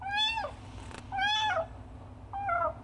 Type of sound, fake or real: real